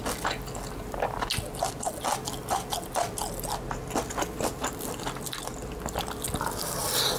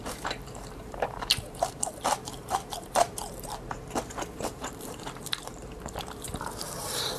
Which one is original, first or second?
first